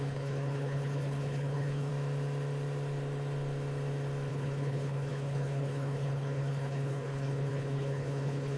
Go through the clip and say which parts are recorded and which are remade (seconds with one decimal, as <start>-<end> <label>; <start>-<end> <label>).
0.0-1.9 remade; 1.9-4.3 recorded; 4.3-8.6 remade